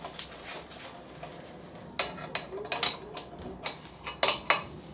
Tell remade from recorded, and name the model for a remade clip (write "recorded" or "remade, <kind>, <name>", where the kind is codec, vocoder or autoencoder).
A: recorded